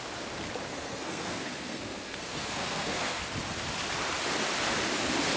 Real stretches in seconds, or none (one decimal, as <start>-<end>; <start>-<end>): 0.0-0.7; 3.2-5.4